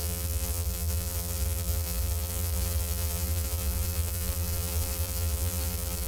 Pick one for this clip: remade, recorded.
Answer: remade